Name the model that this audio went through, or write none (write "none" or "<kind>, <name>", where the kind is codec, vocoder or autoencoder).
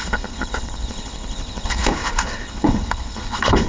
codec, HILCodec